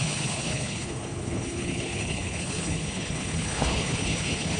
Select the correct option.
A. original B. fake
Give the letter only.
B